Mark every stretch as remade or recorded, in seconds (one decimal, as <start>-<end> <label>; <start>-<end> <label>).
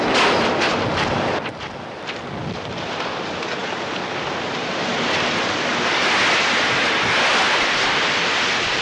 0.0-3.6 remade; 3.6-4.5 recorded; 4.5-4.9 remade; 4.9-7.3 recorded; 7.3-8.8 remade